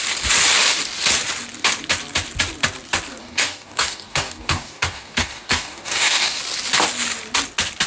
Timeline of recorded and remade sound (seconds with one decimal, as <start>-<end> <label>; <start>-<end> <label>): 0.0-3.2 recorded; 3.2-6.4 remade; 6.4-7.9 recorded

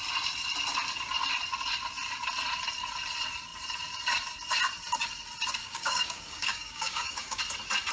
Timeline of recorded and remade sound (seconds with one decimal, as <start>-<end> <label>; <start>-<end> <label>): 0.0-5.6 recorded; 5.6-7.4 remade; 7.4-7.9 recorded

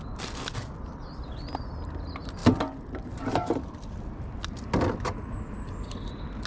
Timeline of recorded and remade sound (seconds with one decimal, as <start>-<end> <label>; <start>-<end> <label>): 0.0-6.5 recorded

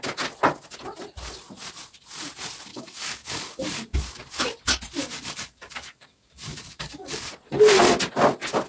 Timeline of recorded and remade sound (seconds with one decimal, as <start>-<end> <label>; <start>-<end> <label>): 0.0-2.7 recorded; 2.7-4.0 remade; 4.0-5.0 recorded; 5.0-7.3 remade; 7.3-8.7 recorded

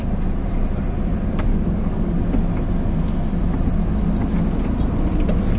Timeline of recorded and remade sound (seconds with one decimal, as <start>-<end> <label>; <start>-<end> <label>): 0.0-1.5 recorded; 1.5-2.2 remade; 2.2-5.6 recorded

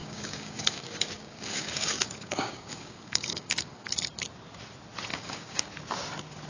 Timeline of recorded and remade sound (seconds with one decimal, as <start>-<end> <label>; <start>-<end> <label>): 0.0-3.9 remade; 3.9-5.1 recorded; 5.1-5.7 remade; 5.7-6.5 recorded

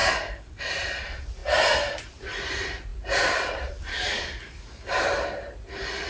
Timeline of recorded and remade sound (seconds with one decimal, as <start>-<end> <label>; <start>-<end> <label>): 0.0-0.6 remade; 0.6-3.9 recorded; 3.9-5.1 remade; 5.1-6.1 recorded